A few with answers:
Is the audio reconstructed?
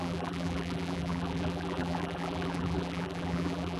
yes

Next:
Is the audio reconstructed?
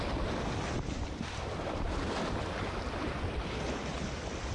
yes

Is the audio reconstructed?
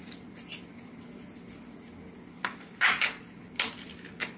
no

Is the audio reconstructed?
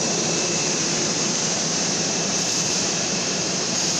yes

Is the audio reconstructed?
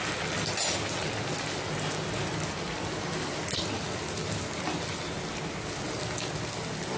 no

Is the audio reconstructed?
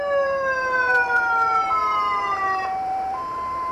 yes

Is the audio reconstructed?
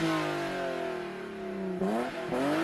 no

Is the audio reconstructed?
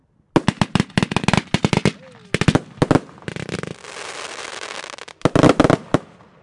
no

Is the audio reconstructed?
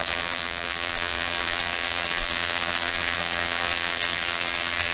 yes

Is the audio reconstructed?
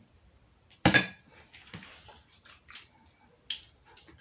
no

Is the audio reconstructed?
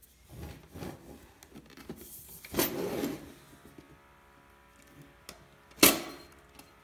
no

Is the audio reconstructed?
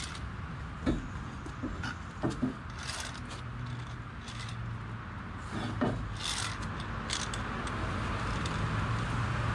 no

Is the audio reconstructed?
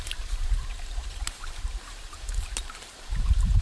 yes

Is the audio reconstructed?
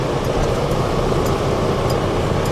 yes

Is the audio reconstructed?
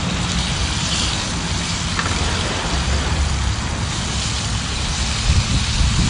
no